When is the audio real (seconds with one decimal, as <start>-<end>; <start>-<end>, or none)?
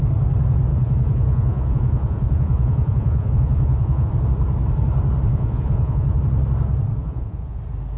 0.0-0.7; 4.1-5.3; 6.2-7.0; 7.6-8.0